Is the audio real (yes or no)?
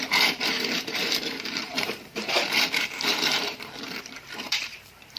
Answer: no